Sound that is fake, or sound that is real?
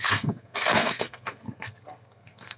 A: fake